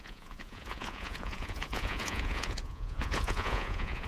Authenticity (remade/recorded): remade